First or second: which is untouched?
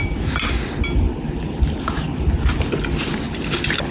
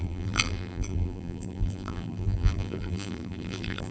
first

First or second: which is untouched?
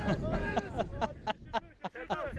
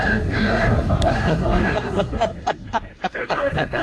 first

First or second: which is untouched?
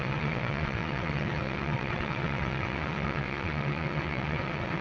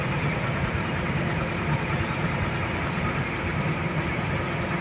second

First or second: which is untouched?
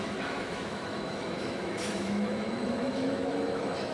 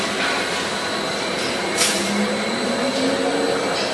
second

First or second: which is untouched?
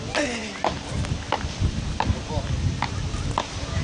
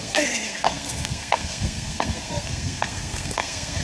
first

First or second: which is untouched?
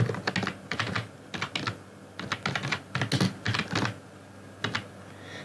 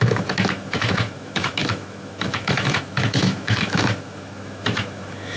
first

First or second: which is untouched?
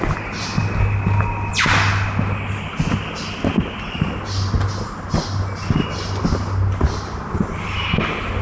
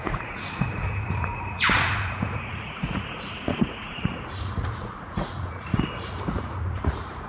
first